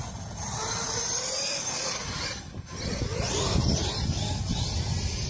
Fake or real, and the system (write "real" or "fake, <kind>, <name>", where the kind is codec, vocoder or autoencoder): real